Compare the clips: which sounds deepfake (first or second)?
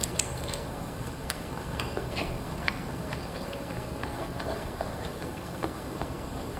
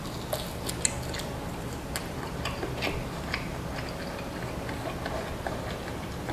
first